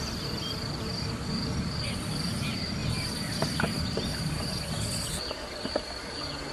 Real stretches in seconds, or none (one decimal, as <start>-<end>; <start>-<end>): 0.0-6.5